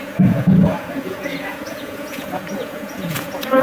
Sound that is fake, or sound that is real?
fake